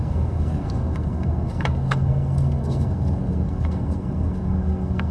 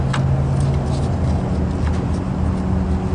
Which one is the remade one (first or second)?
first